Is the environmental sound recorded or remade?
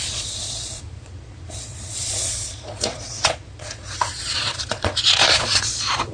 remade